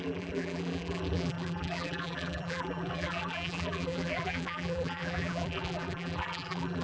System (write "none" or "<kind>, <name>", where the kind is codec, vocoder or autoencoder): vocoder, BigVGAN v2